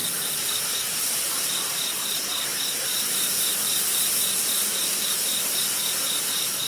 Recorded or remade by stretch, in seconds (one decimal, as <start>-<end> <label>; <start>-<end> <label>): 0.0-0.5 remade; 0.5-2.5 recorded; 2.5-5.6 remade; 5.6-6.7 recorded